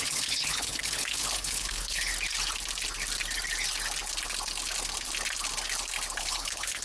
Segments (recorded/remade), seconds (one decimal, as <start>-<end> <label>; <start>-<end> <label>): 0.0-2.1 remade; 2.1-6.2 recorded; 6.2-6.8 remade